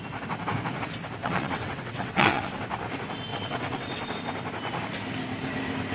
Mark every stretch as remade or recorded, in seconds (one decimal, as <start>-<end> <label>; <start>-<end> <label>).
0.0-1.2 recorded; 1.2-2.6 remade; 2.6-3.3 recorded; 3.3-4.1 remade; 4.1-5.9 recorded